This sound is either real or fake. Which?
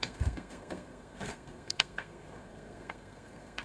fake